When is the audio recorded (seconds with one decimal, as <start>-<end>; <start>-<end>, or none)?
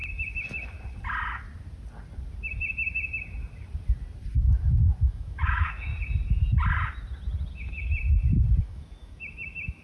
0.0-5.0; 5.9-7.5; 7.9-8.6